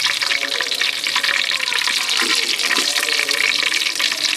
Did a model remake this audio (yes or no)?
no